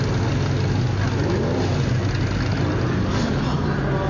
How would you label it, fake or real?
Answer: real